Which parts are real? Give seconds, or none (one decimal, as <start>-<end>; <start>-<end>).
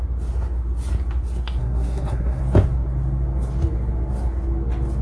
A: 0.0-1.6; 2.4-5.0